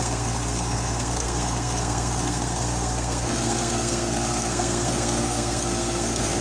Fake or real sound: fake